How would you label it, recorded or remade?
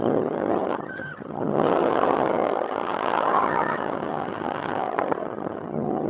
remade